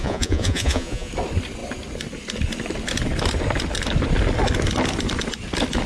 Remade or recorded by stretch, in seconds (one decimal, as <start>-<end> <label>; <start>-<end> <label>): 0.0-1.1 remade; 1.1-5.9 recorded